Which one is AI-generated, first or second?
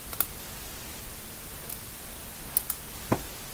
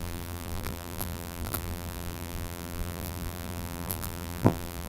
second